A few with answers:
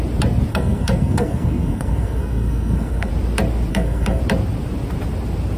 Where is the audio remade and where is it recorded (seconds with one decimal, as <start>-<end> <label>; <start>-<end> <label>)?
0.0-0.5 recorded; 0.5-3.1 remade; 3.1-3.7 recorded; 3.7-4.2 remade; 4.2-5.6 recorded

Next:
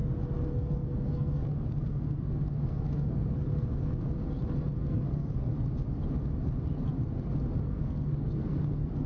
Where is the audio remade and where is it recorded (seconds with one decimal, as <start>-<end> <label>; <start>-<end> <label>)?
0.0-0.5 recorded; 0.5-4.2 remade; 4.2-4.8 recorded; 4.8-5.5 remade; 5.5-7.6 recorded; 7.6-9.1 remade

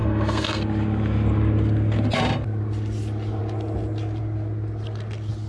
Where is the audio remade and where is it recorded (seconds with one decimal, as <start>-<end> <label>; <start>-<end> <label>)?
0.0-0.6 remade; 0.6-5.5 recorded